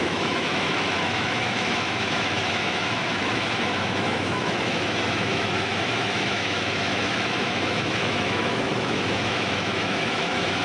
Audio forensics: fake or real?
fake